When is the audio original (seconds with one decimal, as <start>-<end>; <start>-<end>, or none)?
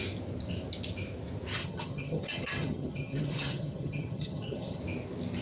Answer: 0.0-1.6; 4.8-5.4